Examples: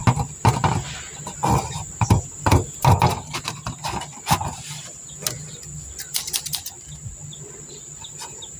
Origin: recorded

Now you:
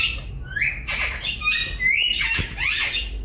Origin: recorded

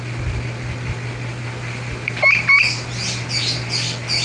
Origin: recorded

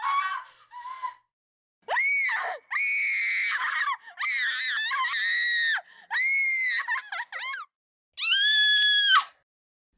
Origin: recorded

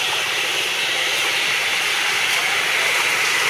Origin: recorded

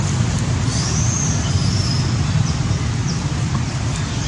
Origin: recorded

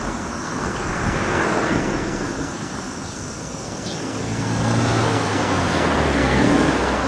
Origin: remade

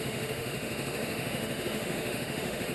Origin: remade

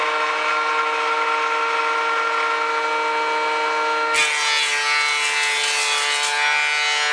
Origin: recorded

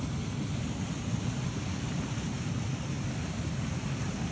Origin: recorded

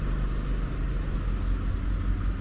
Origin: recorded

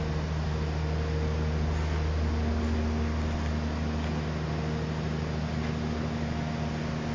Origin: recorded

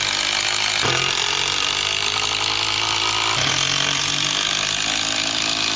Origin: recorded